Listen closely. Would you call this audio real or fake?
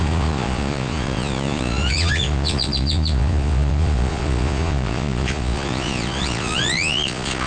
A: fake